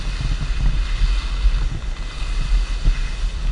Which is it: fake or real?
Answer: real